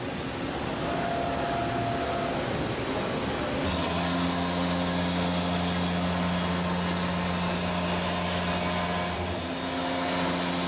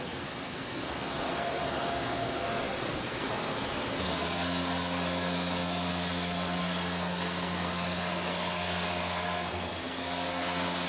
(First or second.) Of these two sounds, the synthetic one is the second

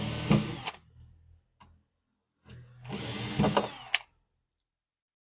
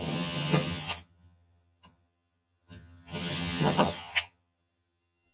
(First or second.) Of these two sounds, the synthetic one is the second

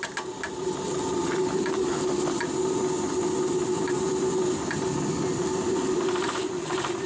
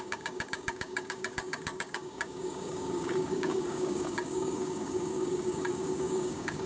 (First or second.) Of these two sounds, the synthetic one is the second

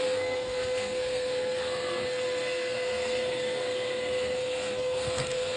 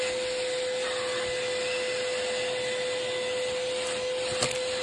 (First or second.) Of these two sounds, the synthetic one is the first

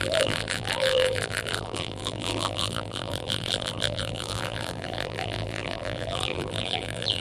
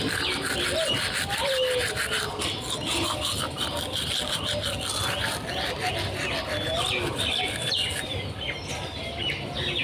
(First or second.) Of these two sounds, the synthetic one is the first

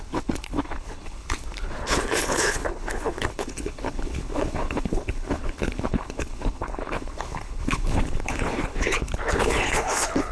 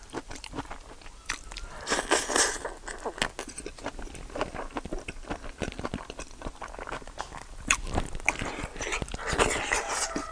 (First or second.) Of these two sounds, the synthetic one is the first